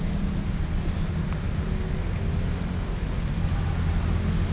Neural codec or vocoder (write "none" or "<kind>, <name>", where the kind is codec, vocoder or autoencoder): none